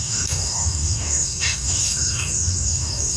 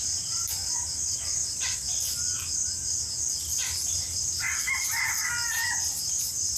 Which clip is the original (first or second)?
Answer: second